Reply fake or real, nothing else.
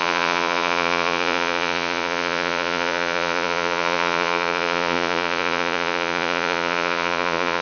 fake